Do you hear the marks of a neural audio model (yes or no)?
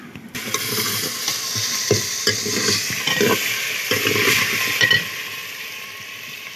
yes